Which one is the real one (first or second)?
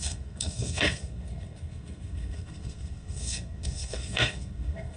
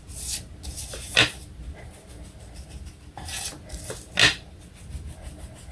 second